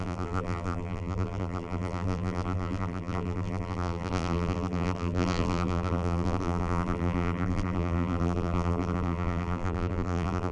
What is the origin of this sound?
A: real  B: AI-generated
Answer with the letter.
B